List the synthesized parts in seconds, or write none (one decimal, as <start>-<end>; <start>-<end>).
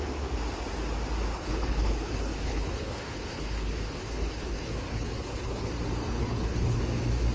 1.3-5.7; 6.2-6.8